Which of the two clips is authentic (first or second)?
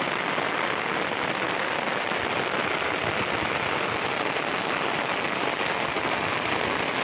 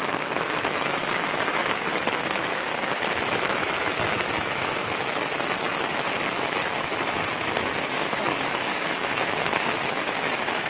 first